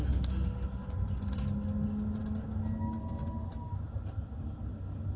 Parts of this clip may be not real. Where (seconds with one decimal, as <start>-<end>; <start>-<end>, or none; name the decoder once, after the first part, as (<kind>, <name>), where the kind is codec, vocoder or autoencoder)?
none